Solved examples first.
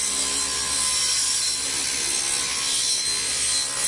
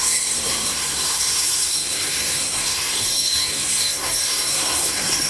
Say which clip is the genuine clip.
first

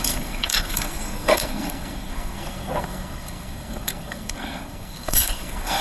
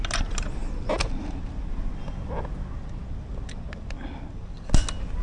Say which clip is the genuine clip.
second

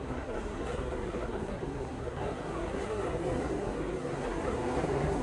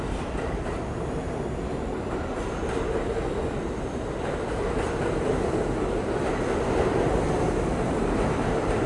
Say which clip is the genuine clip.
second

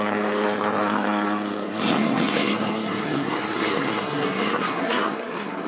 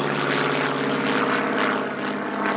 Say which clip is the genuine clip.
second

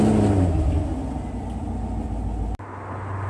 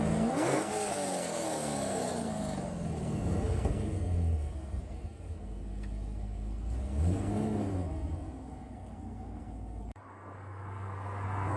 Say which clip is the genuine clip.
first